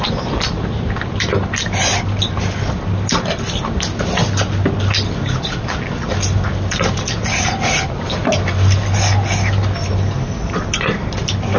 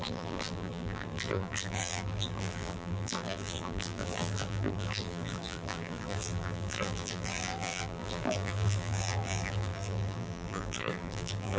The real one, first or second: first